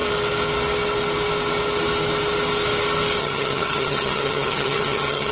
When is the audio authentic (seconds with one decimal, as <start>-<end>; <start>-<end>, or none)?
0.0-3.2